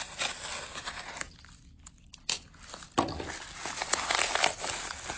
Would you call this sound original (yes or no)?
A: yes